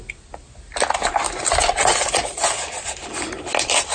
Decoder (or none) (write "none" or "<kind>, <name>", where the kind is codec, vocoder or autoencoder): none